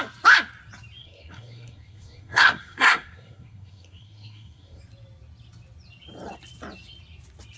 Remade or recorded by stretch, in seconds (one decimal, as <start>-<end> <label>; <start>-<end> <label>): 0.0-1.0 recorded; 1.0-4.8 remade; 4.8-7.6 recorded